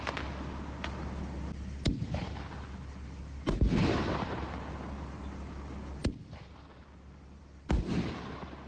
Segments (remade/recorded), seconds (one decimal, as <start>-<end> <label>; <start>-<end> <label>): 0.0-8.7 recorded